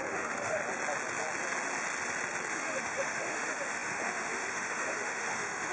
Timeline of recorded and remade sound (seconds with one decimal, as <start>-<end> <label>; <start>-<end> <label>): 0.0-0.6 remade; 0.6-2.5 recorded; 2.5-5.7 remade